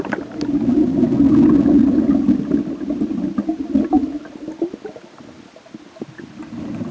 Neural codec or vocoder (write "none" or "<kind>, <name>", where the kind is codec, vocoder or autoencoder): none